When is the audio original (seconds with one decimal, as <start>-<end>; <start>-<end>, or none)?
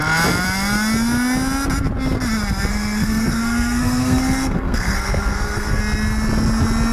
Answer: 0.0-2.7; 5.8-6.9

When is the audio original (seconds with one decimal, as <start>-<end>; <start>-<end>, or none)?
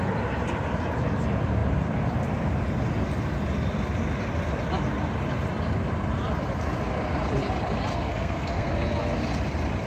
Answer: 0.0-7.9; 8.7-9.9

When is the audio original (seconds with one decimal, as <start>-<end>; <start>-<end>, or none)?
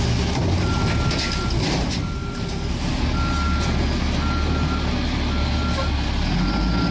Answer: 0.0-6.9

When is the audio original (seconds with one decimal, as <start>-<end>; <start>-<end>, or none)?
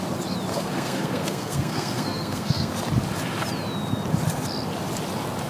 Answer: 0.0-0.5; 2.7-5.5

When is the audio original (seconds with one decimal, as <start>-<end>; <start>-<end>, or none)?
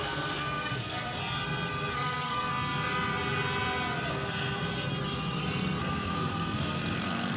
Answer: 1.2-1.9; 2.5-4.1; 4.6-5.8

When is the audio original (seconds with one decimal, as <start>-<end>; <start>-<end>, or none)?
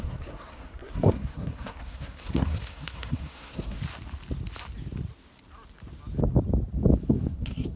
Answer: 3.8-7.1